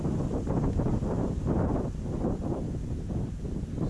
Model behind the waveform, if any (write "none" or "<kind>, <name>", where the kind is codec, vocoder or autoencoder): none